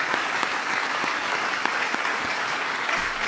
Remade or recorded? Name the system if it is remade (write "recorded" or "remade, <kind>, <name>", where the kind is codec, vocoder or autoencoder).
remade, codec, DAC